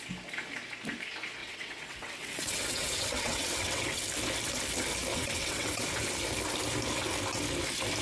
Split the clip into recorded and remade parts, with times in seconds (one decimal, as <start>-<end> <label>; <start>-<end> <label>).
0.0-1.4 recorded; 1.4-4.0 remade; 4.0-5.1 recorded; 5.1-5.8 remade; 5.8-8.0 recorded